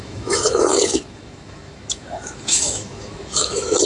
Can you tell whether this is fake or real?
fake